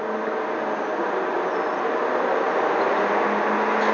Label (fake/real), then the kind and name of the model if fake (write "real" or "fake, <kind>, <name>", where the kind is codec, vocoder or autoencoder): real